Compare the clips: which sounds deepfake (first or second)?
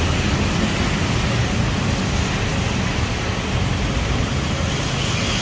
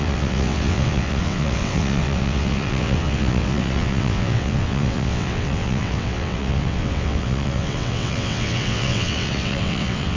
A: second